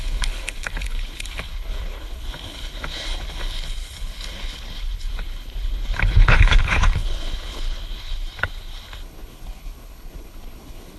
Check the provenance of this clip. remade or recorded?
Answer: remade